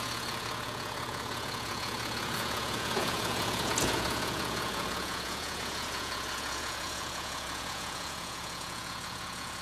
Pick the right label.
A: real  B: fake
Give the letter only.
B